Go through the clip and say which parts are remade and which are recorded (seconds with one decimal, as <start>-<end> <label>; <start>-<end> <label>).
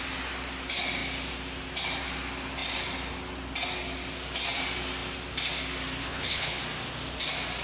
0.0-6.0 recorded; 6.0-6.6 remade; 6.6-7.6 recorded